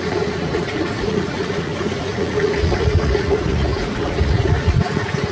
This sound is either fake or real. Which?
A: fake